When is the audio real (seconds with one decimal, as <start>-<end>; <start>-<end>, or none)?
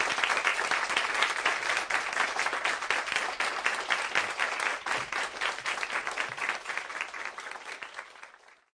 0.0-4.7; 5.5-6.9; 7.6-8.8